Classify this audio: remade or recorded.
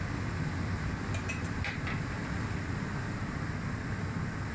recorded